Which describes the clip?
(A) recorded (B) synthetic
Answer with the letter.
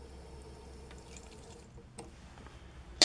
A